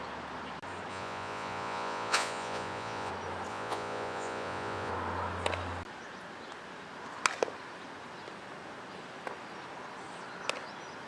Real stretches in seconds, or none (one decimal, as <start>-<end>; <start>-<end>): 0.0-0.9; 3.1-3.5; 4.9-11.1

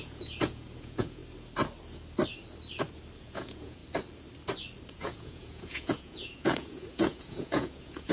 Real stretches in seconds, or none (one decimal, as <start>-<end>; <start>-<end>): 1.2-3.2; 3.8-4.9

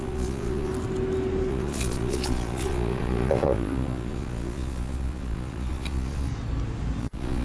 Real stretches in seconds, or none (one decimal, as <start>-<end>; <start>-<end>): 0.7-1.5; 6.3-7.0

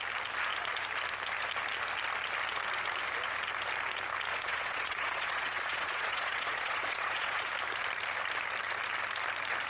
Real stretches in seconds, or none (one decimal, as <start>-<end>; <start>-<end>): 0.0-4.3; 7.5-9.7

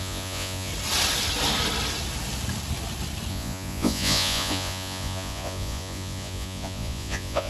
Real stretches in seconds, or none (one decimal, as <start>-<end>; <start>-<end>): 0.7-3.3

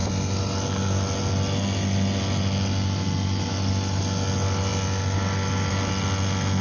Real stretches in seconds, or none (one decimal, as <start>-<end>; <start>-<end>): 0.0-6.6

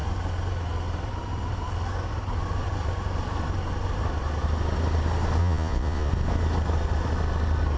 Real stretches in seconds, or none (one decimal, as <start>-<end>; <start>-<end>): 0.0-5.4; 6.1-7.8